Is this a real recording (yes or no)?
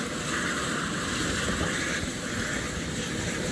yes